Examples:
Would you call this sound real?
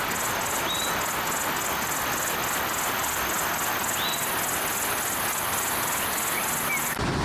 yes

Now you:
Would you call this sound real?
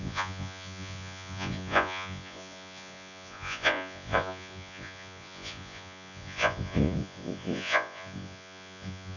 no